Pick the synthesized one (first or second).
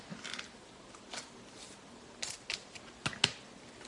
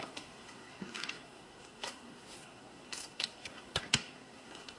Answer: second